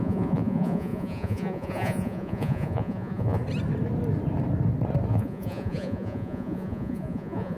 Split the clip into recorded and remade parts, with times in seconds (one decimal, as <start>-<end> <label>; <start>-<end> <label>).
0.0-3.4 remade; 3.4-5.1 recorded; 5.1-7.6 remade